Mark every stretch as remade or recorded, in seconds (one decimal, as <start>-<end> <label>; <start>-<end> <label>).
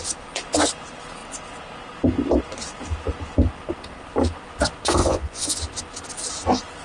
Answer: 0.0-5.0 recorded; 5.0-5.6 remade; 5.6-6.8 recorded